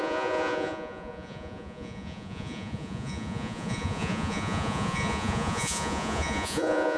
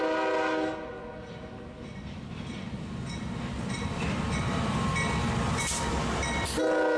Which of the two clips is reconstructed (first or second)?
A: first